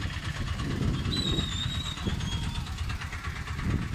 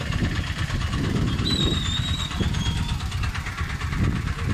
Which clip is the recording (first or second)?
first